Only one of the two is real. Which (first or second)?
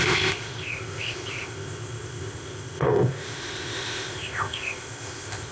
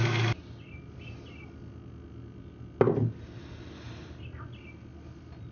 second